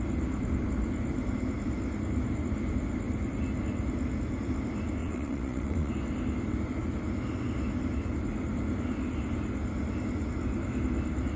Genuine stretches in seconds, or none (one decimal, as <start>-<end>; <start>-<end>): 0.0-5.0; 5.9-11.4

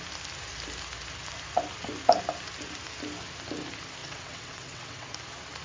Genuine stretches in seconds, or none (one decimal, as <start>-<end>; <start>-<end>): 0.0-4.0; 5.1-5.6

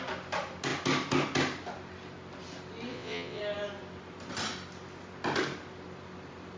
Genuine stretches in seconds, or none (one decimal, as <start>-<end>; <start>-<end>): 0.0-2.9; 3.4-6.6